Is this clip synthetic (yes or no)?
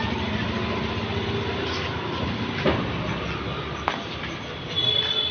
no